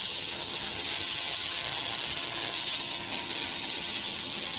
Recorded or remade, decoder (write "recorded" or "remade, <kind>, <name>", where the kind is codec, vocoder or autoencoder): remade, vocoder, HiFi-GAN